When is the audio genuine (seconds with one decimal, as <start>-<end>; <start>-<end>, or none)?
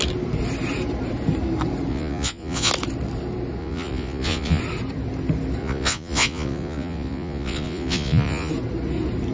0.0-1.9; 2.7-3.6; 4.6-5.6; 8.5-9.3